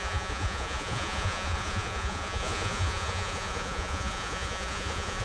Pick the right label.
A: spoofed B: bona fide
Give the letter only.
A